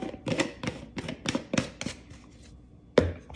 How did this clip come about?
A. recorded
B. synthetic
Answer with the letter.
A